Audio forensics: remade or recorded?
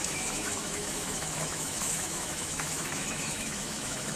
remade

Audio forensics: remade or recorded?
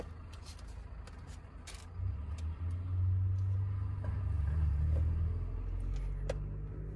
recorded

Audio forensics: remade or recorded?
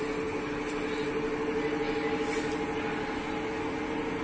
recorded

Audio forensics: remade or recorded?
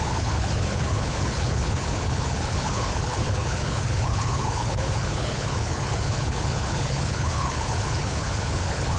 remade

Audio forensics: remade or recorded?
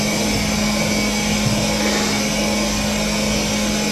recorded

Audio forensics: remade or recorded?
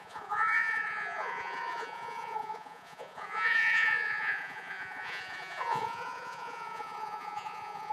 remade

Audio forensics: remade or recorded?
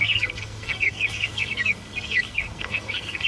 remade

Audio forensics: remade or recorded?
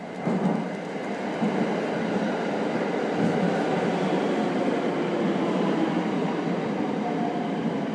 recorded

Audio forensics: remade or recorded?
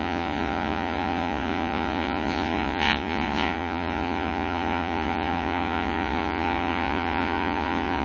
remade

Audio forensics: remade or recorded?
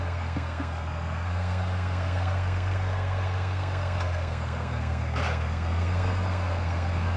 remade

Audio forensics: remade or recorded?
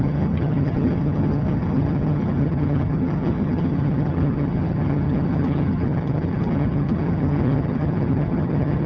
remade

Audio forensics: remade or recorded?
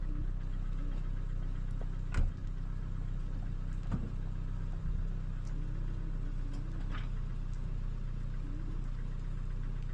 recorded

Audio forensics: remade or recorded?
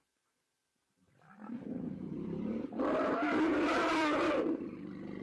remade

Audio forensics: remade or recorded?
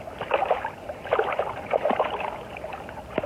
remade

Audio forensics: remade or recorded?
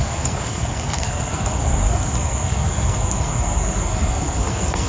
remade